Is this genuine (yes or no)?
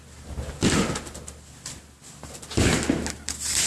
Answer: yes